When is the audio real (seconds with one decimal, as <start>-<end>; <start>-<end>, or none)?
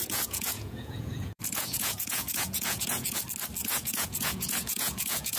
3.2-3.6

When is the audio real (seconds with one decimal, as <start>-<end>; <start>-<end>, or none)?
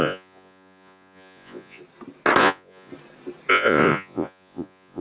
1.8-2.4; 2.9-3.5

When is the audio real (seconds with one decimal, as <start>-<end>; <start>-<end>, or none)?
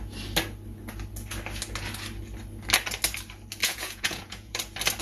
0.0-3.6; 4.5-5.0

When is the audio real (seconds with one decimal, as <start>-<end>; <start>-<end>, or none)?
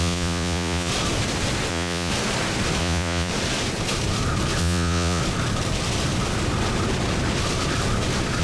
0.9-1.7; 2.1-2.8; 3.3-4.6; 5.2-8.4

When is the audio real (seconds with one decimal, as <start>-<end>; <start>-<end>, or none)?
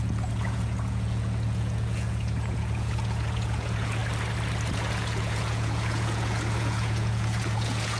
4.0-4.7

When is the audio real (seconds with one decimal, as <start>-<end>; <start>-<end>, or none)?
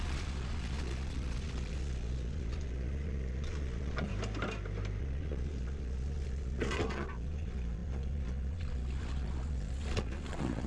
4.1-5.0